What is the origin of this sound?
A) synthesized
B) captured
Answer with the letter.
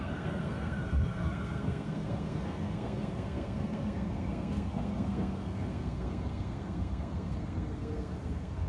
A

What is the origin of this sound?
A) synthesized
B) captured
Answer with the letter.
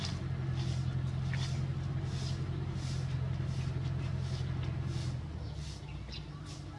B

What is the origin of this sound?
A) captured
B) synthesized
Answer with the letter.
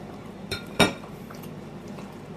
B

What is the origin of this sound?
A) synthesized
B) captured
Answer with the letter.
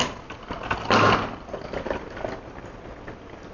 B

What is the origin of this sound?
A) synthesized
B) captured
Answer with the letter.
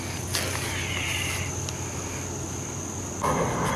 B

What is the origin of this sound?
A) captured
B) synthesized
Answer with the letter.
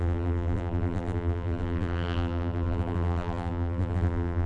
B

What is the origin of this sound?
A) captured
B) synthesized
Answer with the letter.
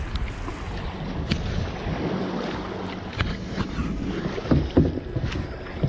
A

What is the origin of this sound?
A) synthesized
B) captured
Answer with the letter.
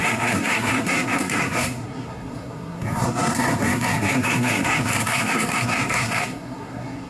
A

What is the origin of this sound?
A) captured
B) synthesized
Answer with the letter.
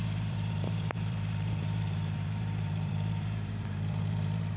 B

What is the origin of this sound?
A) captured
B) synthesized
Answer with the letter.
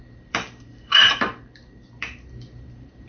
B